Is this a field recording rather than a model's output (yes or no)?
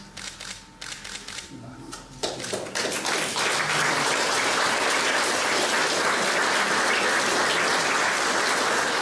yes